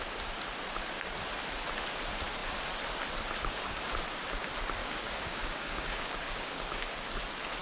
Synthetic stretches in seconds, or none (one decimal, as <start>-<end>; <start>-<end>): 4.8-6.8